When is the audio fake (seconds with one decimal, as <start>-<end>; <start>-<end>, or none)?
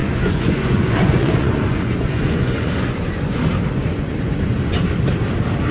0.0-3.4; 3.8-4.8